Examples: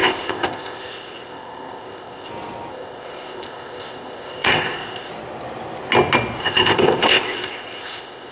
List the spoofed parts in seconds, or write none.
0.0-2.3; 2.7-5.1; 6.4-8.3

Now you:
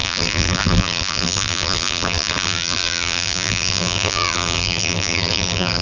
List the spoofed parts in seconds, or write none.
0.0-5.8

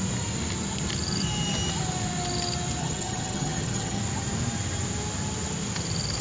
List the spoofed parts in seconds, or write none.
2.8-4.0

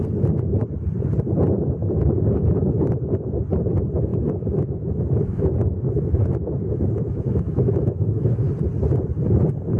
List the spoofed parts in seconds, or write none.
1.8-2.9; 4.1-8.5

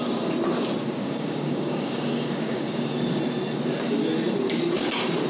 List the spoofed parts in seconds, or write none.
1.0-3.2

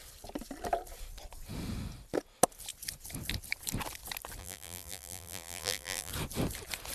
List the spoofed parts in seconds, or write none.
4.4-6.1

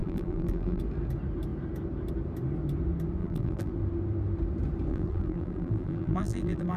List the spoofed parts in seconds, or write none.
0.0-0.8; 3.2-3.7; 4.9-6.8

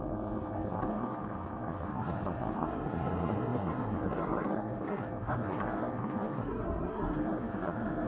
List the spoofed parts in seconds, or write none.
0.0-8.1